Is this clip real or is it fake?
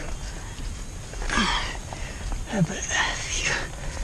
real